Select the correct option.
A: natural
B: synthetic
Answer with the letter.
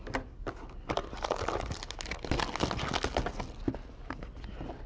A